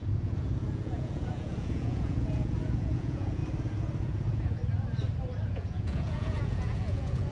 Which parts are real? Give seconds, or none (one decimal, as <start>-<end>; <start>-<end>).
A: 3.4-4.0; 4.6-5.5